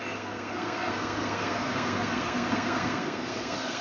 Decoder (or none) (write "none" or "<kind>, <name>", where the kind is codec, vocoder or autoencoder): codec, SNAC